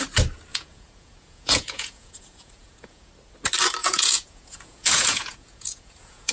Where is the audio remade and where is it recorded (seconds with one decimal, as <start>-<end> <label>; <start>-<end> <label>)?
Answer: 0.0-0.5 recorded; 0.5-3.1 remade; 3.1-3.8 recorded; 3.8-6.3 remade